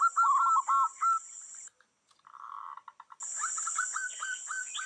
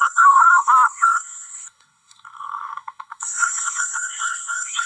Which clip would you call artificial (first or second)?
second